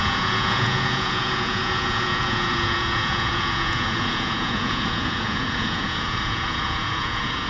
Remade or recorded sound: remade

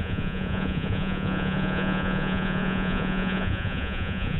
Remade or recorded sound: remade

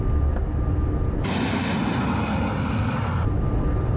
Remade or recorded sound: recorded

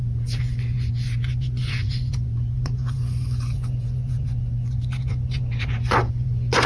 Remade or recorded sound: remade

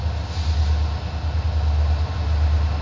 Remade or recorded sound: recorded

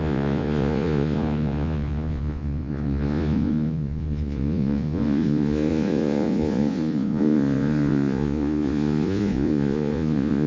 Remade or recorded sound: remade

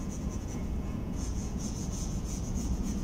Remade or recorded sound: remade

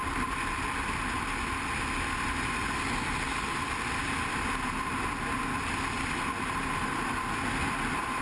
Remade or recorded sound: recorded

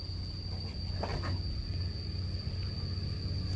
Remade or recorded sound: recorded